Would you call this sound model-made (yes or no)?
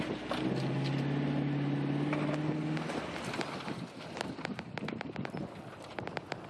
no